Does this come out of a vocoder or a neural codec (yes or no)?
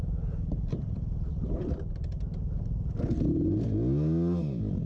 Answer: no